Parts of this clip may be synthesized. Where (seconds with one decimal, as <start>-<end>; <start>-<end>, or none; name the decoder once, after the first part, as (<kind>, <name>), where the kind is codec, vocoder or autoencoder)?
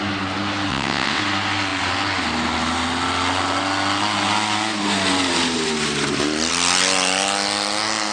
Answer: 0.7-1.2 (vocoder, WaveNeXt)